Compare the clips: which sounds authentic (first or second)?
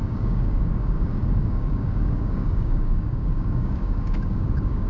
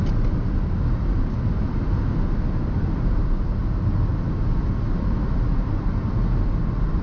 second